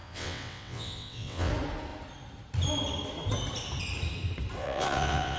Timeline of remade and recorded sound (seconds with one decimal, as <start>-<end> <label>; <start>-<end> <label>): 0.0-1.5 remade; 1.5-4.6 recorded; 4.6-5.4 remade